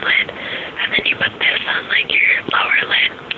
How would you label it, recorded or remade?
recorded